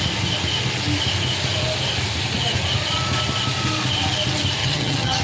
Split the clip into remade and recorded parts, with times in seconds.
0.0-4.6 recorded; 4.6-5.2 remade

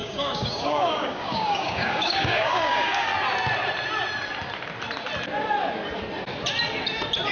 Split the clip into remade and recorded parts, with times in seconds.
0.0-3.1 remade; 3.1-7.3 recorded

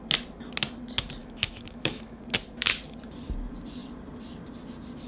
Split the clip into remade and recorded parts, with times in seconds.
0.0-1.2 recorded; 1.2-2.2 remade; 2.2-5.1 recorded

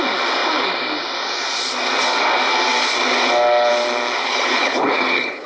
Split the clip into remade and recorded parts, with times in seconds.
0.0-4.2 recorded; 4.2-5.5 remade

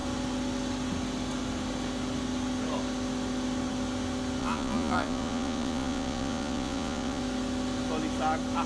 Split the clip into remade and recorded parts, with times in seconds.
0.0-4.4 recorded; 4.4-7.2 remade; 7.2-8.7 recorded